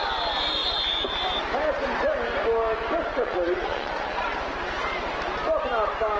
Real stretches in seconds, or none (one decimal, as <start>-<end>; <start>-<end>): 0.0-3.1; 4.3-6.2

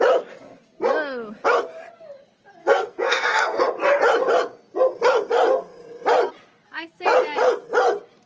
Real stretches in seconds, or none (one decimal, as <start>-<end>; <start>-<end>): 0.0-2.6; 3.6-8.3